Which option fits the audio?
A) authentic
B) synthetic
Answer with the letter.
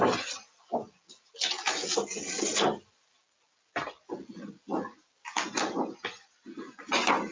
A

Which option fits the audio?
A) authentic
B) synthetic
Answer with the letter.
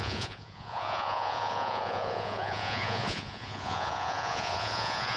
B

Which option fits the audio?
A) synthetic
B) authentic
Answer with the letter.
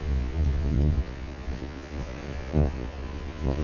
A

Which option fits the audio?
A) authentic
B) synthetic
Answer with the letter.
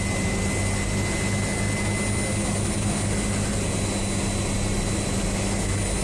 A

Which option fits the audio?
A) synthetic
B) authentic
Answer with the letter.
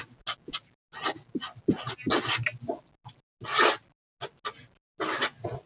B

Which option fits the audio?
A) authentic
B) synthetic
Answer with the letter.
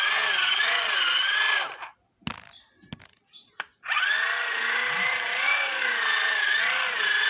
A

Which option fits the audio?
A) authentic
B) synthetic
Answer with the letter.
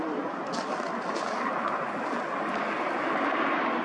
A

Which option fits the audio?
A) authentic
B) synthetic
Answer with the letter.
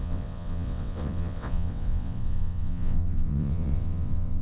B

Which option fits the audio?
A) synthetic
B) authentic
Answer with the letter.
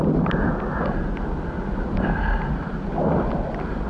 B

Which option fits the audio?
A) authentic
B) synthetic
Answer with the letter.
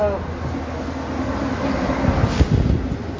A